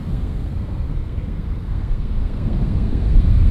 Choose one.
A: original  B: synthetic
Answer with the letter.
B